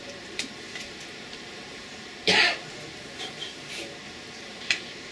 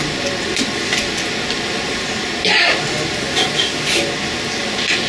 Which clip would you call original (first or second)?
second